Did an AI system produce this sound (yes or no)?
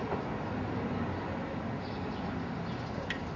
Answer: no